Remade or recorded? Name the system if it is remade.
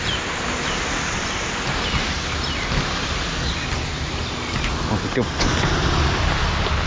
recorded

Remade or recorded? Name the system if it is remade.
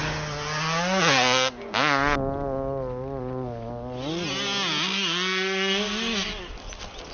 recorded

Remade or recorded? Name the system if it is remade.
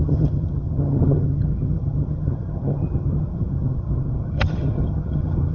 remade, vocoder, HiFi-GAN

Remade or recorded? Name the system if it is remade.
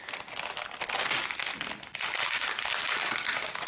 recorded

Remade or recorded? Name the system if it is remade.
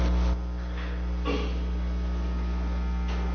recorded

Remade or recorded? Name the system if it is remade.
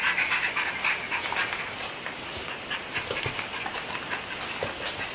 recorded